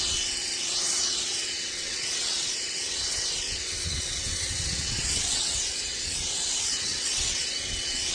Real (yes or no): no